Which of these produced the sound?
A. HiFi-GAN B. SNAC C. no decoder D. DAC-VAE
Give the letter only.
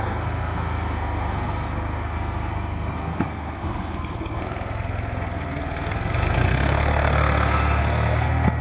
B